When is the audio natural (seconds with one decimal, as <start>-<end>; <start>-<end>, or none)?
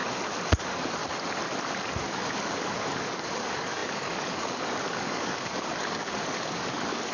0.0-0.5; 1.0-1.9